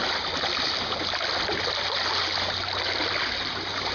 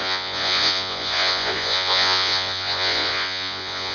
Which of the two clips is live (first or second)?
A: first